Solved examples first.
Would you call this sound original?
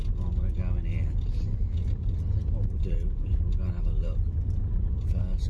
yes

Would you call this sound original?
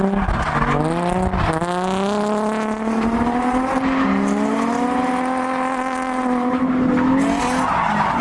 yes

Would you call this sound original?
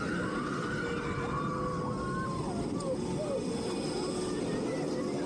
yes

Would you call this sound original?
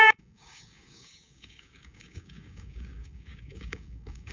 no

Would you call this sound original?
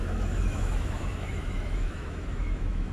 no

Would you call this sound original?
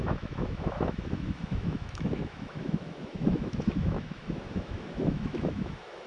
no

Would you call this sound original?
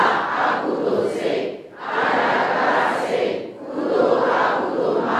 yes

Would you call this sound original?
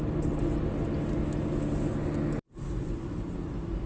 yes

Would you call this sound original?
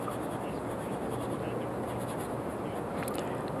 yes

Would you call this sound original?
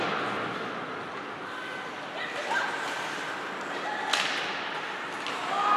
yes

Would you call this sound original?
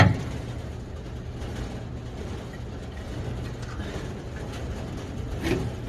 yes